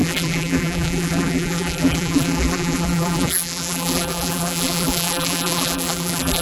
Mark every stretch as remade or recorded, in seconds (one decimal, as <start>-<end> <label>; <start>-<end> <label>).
0.0-6.4 remade